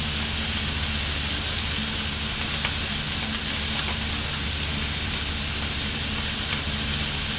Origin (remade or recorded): recorded